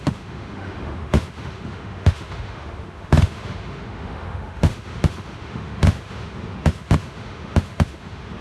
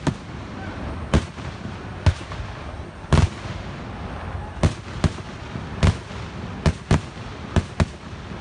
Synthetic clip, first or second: first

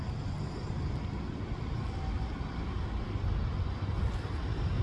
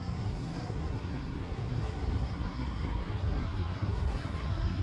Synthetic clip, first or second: second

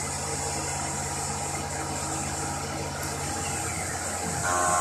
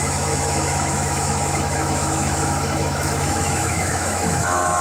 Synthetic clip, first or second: second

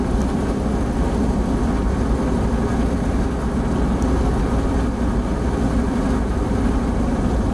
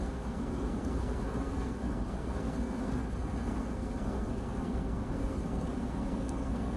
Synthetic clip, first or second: second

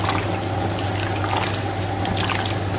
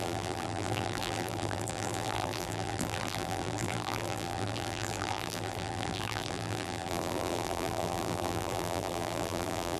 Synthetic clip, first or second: second